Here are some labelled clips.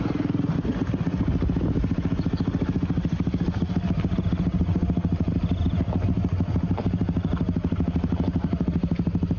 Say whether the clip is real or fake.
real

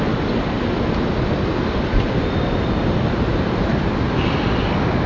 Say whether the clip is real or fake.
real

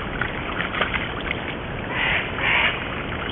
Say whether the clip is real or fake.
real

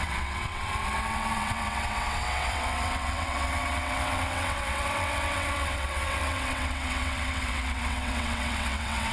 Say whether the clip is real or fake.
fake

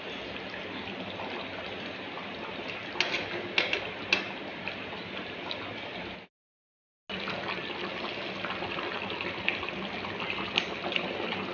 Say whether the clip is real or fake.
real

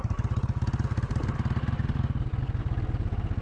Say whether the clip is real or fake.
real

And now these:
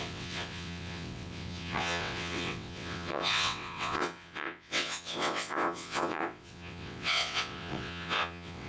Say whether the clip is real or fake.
fake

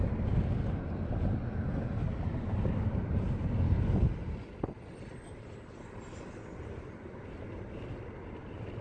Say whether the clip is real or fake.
real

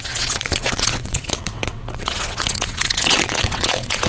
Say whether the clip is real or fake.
fake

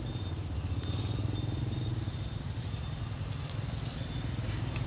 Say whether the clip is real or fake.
real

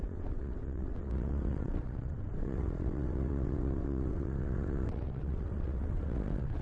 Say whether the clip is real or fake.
fake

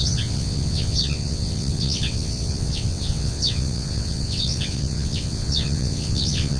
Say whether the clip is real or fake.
fake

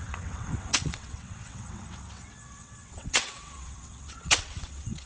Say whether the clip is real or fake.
fake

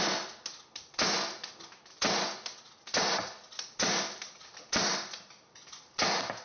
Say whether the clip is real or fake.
real